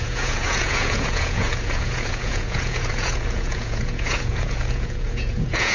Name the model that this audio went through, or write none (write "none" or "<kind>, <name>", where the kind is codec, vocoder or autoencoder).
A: vocoder, Vocos